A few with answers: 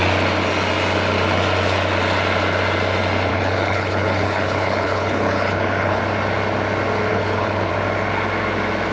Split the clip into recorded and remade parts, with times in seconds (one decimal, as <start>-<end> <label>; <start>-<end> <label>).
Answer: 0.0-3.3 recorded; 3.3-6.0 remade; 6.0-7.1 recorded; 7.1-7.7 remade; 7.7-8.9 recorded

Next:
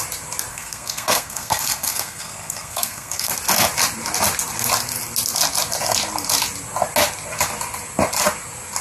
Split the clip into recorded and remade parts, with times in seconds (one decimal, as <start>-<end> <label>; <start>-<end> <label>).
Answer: 0.0-0.5 recorded; 0.5-3.3 remade; 3.3-8.8 recorded

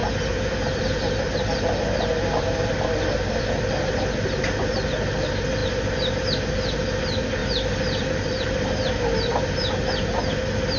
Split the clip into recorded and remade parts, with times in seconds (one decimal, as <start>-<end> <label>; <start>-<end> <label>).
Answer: 0.0-10.8 recorded

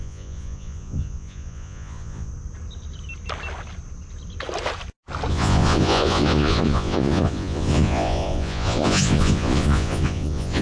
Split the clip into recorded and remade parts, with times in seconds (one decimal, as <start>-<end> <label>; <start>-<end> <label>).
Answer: 0.0-2.3 remade; 2.3-5.3 recorded; 5.3-10.6 remade

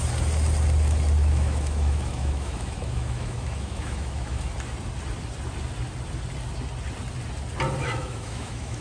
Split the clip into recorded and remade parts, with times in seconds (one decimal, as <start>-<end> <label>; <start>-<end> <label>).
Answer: 0.0-1.2 recorded; 1.2-4.5 remade; 4.5-7.8 recorded; 7.8-8.8 remade

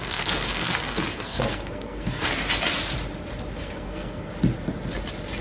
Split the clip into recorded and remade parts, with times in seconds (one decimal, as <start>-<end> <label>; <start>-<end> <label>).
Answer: 0.0-2.3 remade; 2.3-3.6 recorded; 3.6-4.3 remade; 4.3-5.4 recorded